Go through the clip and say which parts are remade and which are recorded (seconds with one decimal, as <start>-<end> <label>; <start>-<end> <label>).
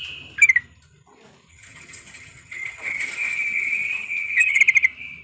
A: 0.0-1.5 recorded; 1.5-4.6 remade; 4.6-5.2 recorded